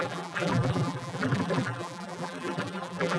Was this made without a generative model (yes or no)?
no